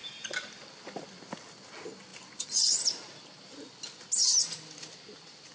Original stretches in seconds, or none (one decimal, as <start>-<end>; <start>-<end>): 0.0-5.5